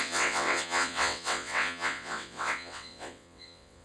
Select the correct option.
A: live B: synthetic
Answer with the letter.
B